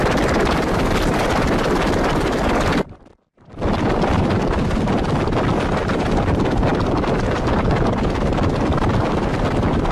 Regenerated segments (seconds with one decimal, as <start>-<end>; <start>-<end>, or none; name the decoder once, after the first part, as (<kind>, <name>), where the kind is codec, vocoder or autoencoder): none